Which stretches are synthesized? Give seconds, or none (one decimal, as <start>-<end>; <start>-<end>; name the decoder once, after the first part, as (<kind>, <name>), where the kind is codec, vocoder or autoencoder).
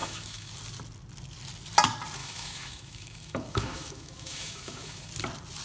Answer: 0.0-0.5 (autoencoder, DAC-VAE); 2.2-5.1